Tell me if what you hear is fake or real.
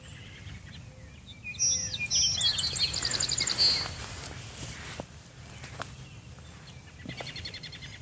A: real